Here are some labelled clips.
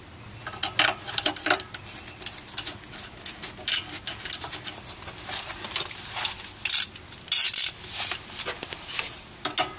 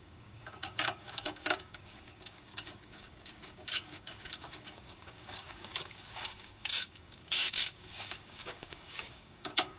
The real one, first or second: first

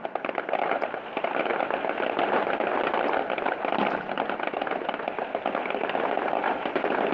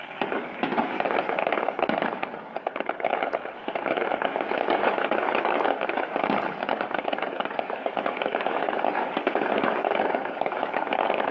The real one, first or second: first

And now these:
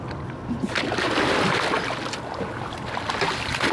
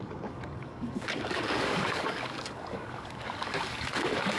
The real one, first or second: first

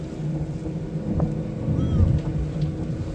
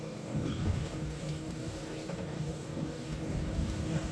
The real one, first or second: first